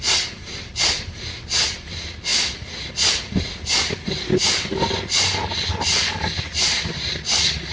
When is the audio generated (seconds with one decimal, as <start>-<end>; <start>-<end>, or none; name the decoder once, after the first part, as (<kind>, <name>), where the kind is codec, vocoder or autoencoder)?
none